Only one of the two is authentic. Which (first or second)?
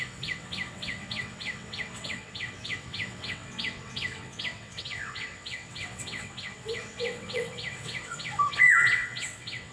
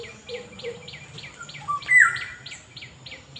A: second